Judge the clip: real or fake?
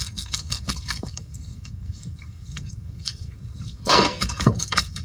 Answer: fake